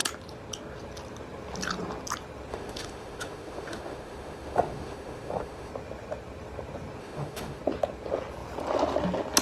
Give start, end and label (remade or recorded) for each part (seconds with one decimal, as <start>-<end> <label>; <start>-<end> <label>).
0.0-2.5 recorded; 2.5-5.7 remade; 5.7-7.0 recorded; 7.0-7.6 remade; 7.6-9.4 recorded